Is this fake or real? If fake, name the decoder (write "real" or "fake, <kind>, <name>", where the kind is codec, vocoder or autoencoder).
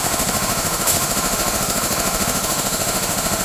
fake, autoencoder, DAC-VAE